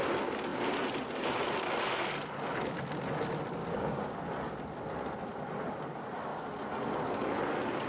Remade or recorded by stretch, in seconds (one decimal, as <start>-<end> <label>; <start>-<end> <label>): 0.0-3.6 recorded; 3.6-4.2 remade; 4.2-7.9 recorded